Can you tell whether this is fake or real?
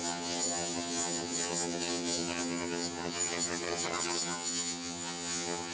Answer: fake